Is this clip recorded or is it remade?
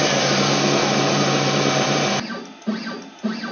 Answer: recorded